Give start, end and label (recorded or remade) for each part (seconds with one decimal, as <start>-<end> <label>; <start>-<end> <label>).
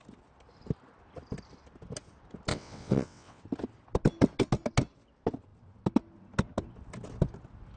0.0-2.5 recorded; 2.5-3.4 remade; 3.4-7.8 recorded